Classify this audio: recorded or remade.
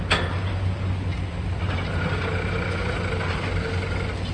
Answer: recorded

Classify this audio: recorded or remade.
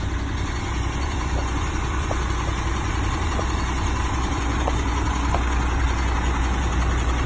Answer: remade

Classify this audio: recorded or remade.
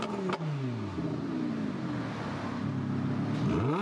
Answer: recorded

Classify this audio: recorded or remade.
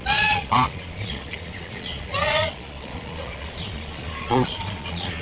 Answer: remade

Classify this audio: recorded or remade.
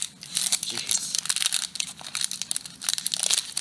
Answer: recorded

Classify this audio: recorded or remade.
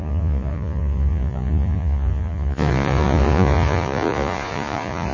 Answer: remade